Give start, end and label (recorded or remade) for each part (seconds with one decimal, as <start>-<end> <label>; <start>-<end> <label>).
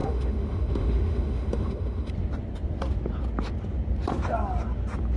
0.0-2.1 remade; 2.1-5.2 recorded